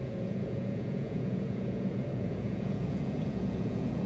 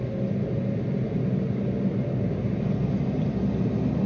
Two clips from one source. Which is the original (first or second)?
second